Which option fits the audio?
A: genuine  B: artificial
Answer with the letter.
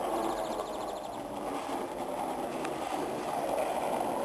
A